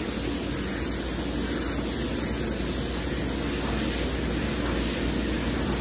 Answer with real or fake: real